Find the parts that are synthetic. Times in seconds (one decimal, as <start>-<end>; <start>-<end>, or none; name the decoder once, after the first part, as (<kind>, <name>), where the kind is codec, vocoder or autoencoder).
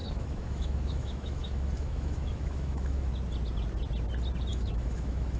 0.0-3.1 (autoencoder, DAC-VAE); 4.5-5.4